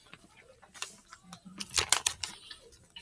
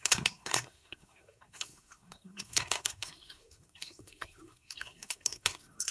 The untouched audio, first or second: first